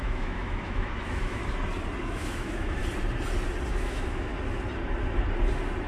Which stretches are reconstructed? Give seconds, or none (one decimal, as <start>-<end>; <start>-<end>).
0.0-1.4; 2.0-2.8; 3.7-4.3